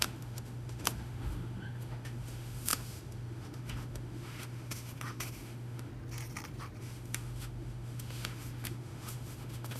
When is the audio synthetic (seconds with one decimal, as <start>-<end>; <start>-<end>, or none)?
0.0-5.9; 6.8-9.8